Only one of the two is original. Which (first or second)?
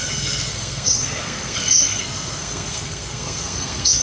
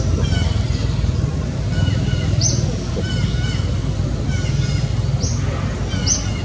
second